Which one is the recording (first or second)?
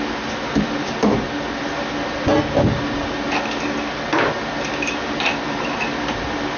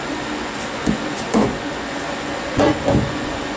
first